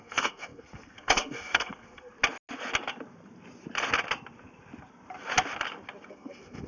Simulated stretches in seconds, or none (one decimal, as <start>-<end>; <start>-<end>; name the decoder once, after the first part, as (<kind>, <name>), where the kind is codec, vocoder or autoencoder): 0.0-2.1 (codec, SNAC); 6.1-6.7